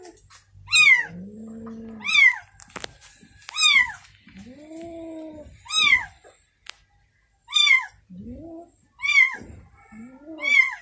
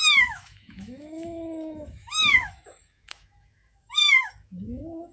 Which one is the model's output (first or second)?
second